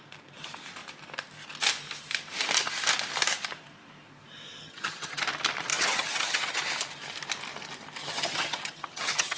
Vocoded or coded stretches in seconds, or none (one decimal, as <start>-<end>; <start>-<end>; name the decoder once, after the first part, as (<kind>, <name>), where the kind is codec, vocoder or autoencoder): 4.6-5.2 (vocoder, HiFi-GAN); 5.7-6.6; 8.0-9.4